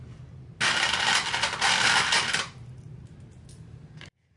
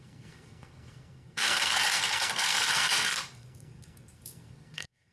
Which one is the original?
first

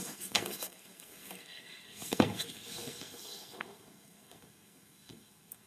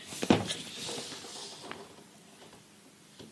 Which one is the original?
second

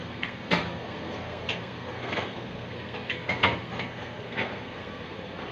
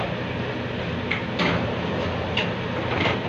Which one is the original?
second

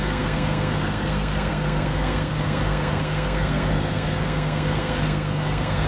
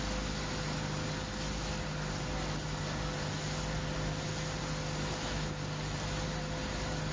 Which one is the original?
second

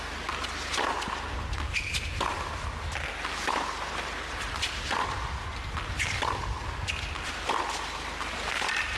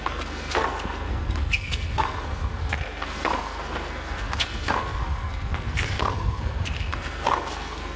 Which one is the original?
first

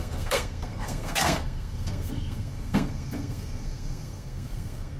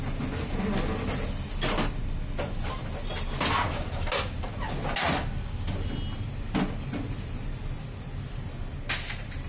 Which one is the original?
second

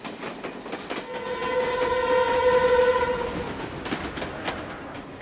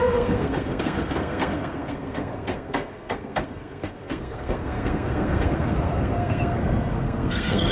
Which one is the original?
first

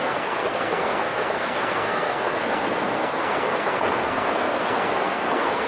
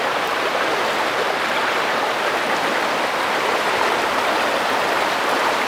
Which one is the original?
second